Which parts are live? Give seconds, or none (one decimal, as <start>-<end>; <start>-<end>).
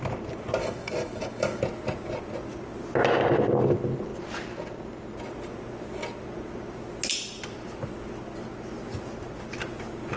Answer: 0.0-0.6; 1.6-10.2